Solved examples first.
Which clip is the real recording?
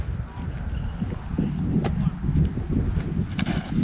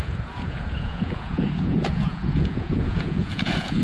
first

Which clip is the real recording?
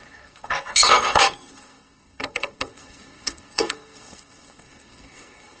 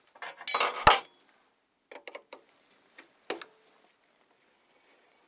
second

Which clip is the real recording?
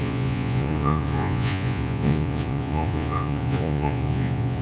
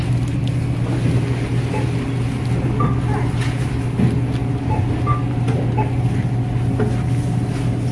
second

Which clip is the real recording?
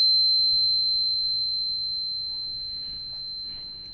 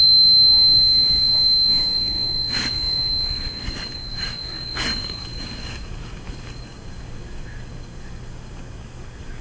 first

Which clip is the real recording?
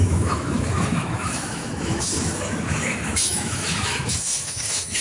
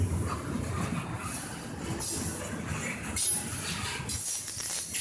second